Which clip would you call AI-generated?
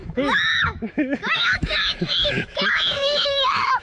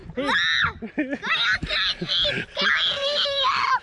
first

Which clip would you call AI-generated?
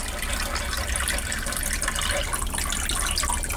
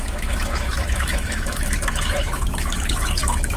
second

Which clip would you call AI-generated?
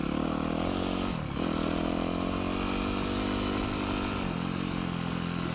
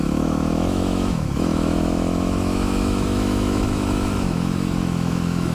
second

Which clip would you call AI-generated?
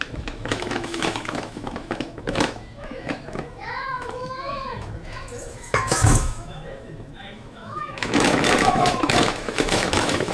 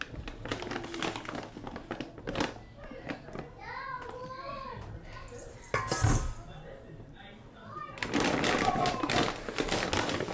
first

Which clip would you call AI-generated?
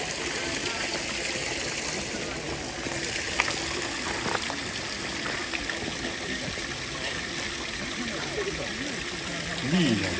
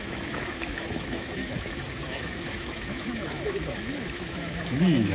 second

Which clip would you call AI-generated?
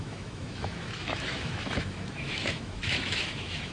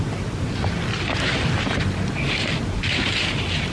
first